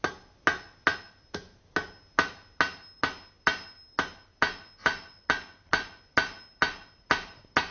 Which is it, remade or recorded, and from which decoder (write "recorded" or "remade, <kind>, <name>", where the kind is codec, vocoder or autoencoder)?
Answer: recorded